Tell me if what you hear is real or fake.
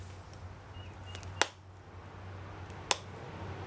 real